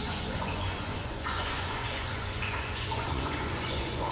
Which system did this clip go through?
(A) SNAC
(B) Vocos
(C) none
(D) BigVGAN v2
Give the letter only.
B